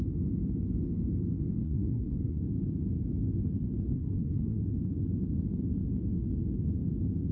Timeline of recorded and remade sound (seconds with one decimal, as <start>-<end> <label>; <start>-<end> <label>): 0.0-1.6 recorded; 1.6-2.4 remade; 2.4-3.9 recorded; 3.9-4.6 remade; 4.6-7.3 recorded